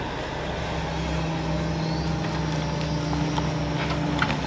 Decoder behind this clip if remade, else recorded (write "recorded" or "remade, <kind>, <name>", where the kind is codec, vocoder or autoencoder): recorded